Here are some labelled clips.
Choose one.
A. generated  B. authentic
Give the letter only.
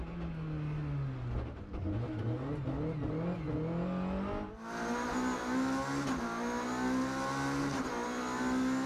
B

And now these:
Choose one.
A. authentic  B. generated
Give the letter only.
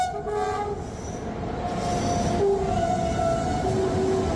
A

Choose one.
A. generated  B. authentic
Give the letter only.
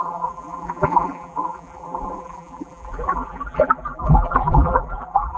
A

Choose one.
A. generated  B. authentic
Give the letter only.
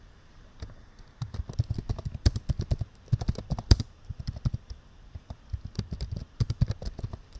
A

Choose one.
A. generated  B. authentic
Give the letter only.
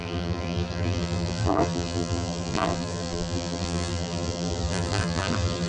A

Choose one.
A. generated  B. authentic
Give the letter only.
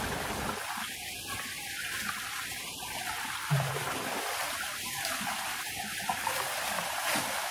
A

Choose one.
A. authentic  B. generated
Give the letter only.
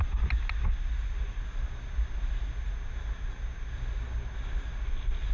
A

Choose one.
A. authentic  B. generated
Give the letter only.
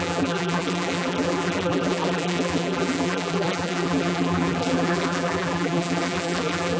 B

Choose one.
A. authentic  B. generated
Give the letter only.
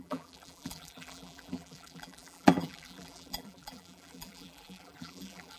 B